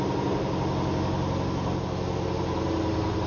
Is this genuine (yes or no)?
yes